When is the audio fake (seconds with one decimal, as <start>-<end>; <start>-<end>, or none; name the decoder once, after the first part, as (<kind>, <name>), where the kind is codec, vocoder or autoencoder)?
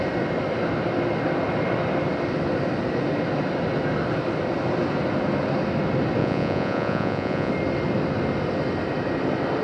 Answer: 6.2-7.5 (vocoder, Vocos)